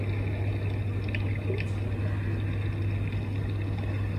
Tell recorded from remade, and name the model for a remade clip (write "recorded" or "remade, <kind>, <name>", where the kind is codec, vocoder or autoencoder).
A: recorded